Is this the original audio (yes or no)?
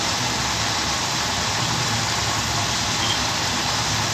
yes